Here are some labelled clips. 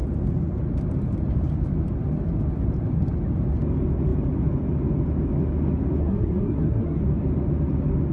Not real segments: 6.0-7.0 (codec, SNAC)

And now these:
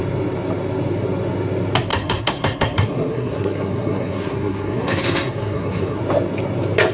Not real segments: 1.9-6.0 (codec, SNAC)

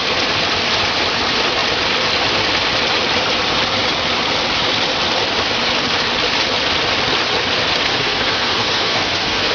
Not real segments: 7.9-9.5 (codec, SNAC)

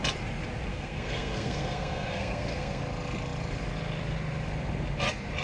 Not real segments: 0.7-2.8 (codec, SNAC)

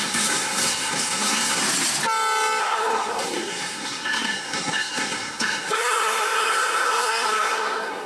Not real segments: 0.0-1.6 (codec, SNAC); 2.6-8.1

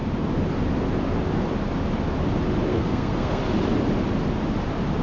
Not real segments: 2.7-3.4 (codec, SNAC)

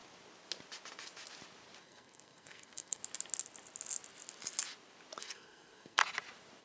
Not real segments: 1.8-3.0 (codec, SNAC); 5.2-6.0

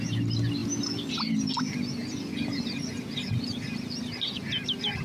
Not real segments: none